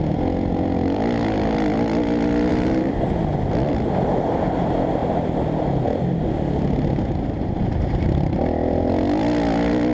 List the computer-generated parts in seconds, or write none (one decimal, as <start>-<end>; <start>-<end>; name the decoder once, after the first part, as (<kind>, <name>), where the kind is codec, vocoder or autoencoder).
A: 2.5-3.0 (vocoder, BigVGAN v2)